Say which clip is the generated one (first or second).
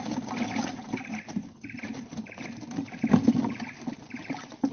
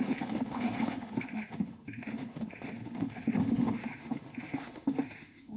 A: second